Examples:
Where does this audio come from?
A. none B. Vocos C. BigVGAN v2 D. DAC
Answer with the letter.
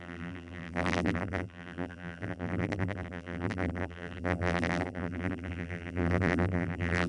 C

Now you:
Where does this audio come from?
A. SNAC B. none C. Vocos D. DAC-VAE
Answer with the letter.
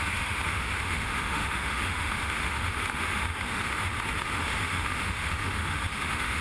D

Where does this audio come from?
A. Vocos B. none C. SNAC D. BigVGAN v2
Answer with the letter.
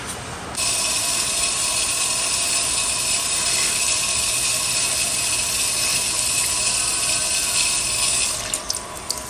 B